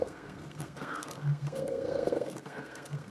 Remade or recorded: remade